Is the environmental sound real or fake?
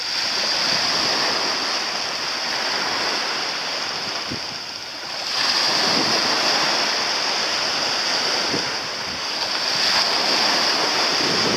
real